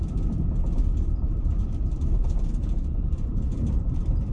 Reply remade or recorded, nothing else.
remade